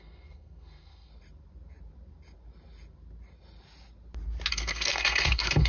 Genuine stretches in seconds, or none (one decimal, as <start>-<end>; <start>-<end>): 1.1-4.5